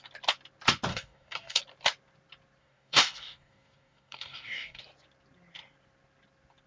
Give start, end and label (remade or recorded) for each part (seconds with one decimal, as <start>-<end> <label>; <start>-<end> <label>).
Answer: 0.0-0.9 recorded; 0.9-1.6 remade; 1.6-2.6 recorded; 2.6-4.8 remade; 4.8-6.7 recorded